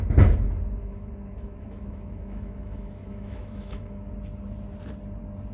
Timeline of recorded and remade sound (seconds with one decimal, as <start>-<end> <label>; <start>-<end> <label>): 0.0-0.8 recorded; 0.8-4.1 remade; 4.1-5.5 recorded

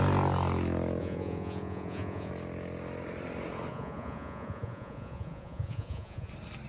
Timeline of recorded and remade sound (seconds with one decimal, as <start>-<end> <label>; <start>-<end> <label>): 0.0-1.0 recorded; 1.0-2.3 remade; 2.3-3.7 recorded; 3.7-6.3 remade; 6.3-6.7 recorded

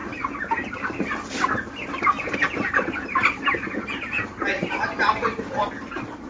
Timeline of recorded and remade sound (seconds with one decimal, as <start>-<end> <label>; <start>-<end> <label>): 0.0-6.3 recorded

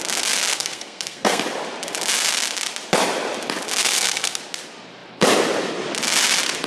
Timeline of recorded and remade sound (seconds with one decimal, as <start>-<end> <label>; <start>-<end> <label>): 0.0-0.5 recorded; 0.5-1.4 remade; 1.4-3.8 recorded; 3.8-4.4 remade; 4.4-6.7 recorded

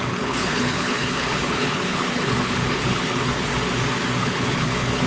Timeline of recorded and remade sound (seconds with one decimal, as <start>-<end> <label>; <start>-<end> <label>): 0.0-3.5 remade; 3.5-4.2 recorded; 4.2-5.1 remade

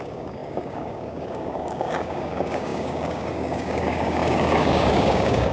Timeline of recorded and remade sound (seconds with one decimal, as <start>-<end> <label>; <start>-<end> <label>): 0.0-5.5 remade